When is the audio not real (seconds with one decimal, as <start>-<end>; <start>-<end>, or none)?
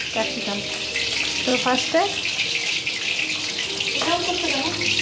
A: none